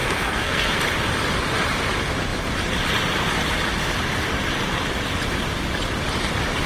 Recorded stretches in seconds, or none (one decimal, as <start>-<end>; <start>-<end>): 0.8-6.7